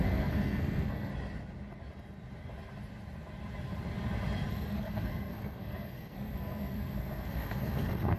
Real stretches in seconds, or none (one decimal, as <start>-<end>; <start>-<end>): 1.1-4.5